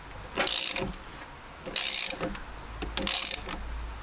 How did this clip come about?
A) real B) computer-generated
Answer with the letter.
A